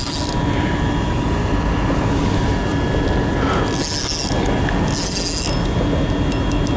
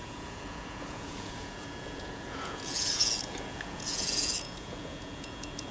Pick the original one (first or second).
first